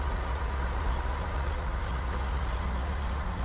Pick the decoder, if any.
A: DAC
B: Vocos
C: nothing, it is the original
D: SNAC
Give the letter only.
B